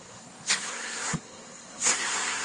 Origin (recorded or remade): remade